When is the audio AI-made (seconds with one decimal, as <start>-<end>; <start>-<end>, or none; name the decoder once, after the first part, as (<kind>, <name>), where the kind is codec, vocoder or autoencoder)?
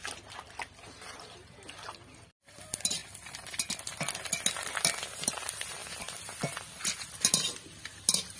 none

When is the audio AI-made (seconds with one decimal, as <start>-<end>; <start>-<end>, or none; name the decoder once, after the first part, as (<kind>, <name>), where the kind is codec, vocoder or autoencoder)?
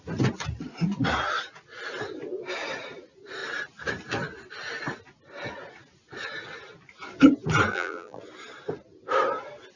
7.7-8.2 (vocoder, BigVGAN v2)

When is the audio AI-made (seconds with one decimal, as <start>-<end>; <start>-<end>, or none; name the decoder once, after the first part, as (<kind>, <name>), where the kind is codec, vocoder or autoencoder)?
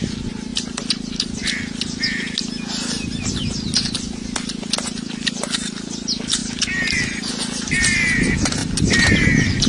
0.5-1.4 (vocoder, BigVGAN v2); 8.6-9.7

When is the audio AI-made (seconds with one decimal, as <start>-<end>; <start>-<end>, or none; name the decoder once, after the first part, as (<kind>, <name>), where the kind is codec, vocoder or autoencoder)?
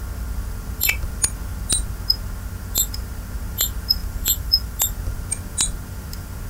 4.0-4.8 (vocoder, BigVGAN v2)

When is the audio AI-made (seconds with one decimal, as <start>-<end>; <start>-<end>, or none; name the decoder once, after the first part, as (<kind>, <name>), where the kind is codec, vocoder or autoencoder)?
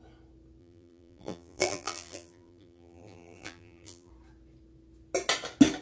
0.6-4.1 (vocoder, BigVGAN v2)